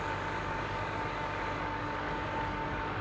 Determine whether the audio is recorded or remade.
remade